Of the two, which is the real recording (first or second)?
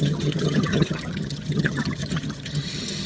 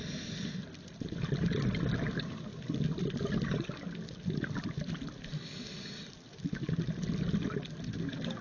second